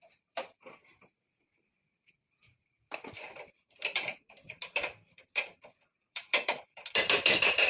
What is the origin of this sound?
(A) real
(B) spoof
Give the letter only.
B